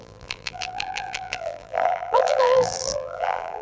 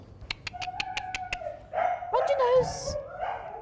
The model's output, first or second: first